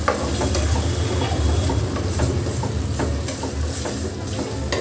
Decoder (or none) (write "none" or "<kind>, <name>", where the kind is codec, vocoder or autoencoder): none